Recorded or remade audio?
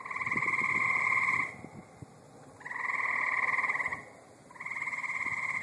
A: recorded